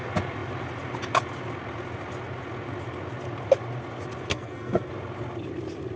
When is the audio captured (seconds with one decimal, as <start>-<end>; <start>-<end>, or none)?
0.0-4.3; 4.9-6.0